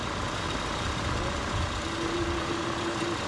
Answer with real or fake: real